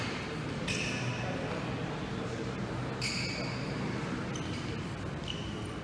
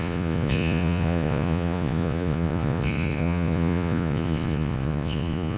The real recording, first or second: first